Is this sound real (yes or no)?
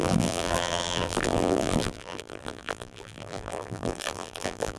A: no